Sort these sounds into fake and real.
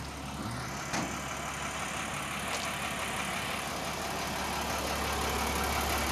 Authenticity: real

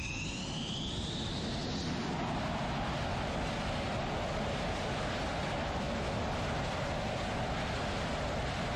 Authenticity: real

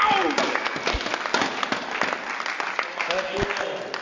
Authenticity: real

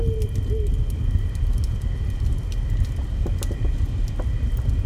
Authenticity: real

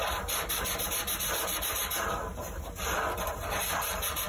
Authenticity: fake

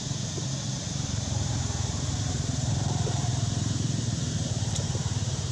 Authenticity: fake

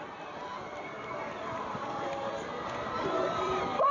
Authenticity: fake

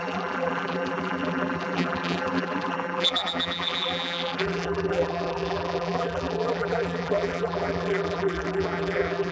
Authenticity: fake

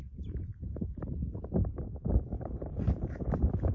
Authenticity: fake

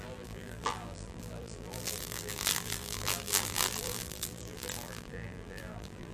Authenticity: fake